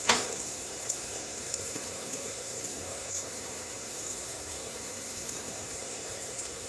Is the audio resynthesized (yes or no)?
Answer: yes